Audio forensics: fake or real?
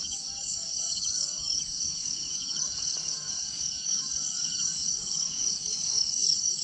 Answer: fake